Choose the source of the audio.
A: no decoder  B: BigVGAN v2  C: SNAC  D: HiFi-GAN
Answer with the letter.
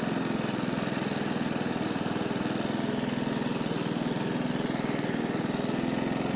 A